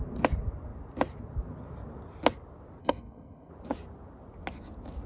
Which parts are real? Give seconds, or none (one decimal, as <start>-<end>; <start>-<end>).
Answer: 0.0-2.8; 3.5-5.1